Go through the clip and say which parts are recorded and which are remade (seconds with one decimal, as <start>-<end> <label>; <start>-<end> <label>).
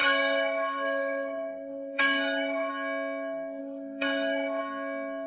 0.0-2.7 remade; 2.7-3.6 recorded; 3.6-4.6 remade; 4.6-5.3 recorded